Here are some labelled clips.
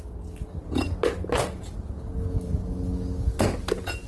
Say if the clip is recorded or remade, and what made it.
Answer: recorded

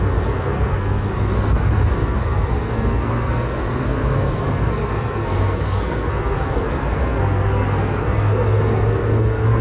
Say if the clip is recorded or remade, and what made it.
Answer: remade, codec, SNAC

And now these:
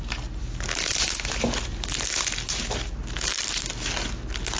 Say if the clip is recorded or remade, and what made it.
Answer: recorded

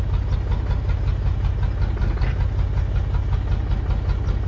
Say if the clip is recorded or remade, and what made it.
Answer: recorded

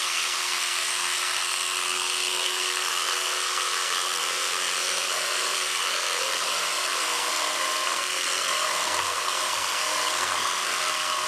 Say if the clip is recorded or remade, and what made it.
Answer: remade, codec, SNAC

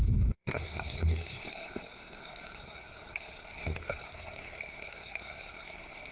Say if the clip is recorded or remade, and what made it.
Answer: remade, codec, SNAC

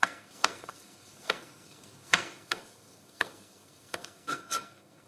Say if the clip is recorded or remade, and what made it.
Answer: remade, codec, SNAC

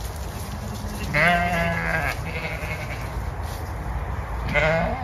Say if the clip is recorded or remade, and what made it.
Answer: recorded